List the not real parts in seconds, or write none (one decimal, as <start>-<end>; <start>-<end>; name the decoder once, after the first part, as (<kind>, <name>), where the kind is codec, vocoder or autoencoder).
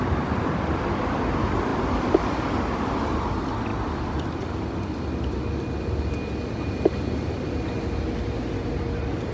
none